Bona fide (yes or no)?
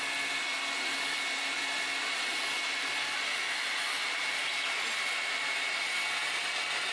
yes